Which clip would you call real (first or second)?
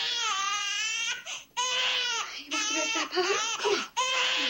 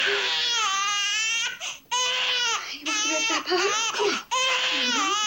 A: second